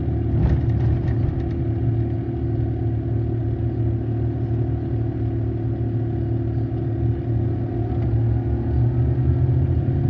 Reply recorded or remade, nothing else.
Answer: recorded